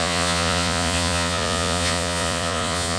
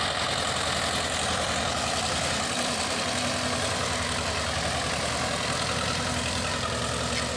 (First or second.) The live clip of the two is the second